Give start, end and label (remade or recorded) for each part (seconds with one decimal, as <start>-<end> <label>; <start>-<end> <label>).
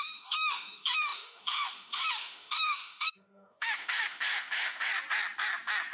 0.0-4.9 remade; 4.9-5.9 recorded